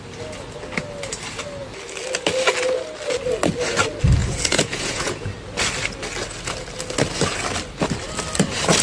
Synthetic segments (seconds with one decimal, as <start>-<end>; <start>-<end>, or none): 4.2-5.3